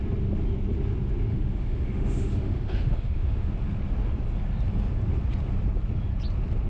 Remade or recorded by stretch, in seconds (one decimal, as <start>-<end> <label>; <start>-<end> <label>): 0.0-1.3 recorded; 1.3-3.5 remade; 3.5-6.7 recorded